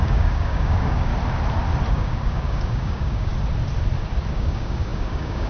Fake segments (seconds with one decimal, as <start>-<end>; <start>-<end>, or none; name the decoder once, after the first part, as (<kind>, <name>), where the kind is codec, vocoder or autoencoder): 0.0-1.1 (codec, DAC); 1.9-3.3; 4.3-5.5